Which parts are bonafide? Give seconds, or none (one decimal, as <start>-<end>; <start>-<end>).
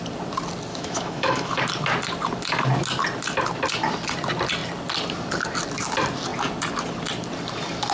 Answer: 0.0-0.7; 1.6-7.9